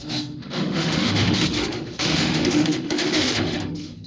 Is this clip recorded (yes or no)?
no